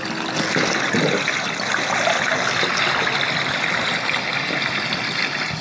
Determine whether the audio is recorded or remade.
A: recorded